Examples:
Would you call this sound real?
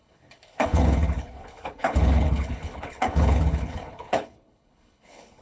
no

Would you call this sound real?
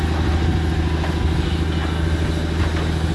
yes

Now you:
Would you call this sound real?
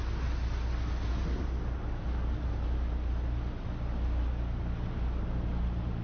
yes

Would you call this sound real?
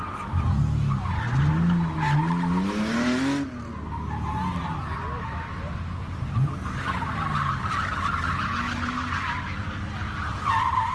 yes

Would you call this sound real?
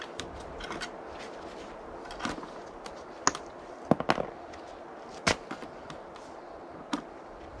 yes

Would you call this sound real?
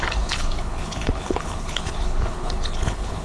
no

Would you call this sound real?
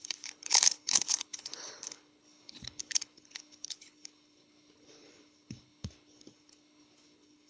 no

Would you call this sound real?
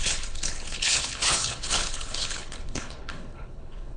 no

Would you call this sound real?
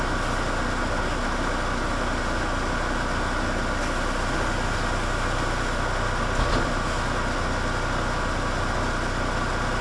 yes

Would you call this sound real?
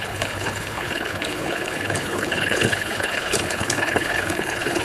no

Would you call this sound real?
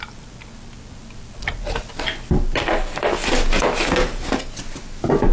yes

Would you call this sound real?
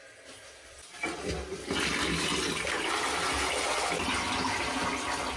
yes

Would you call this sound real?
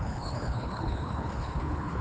no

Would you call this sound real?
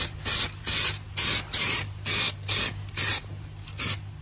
yes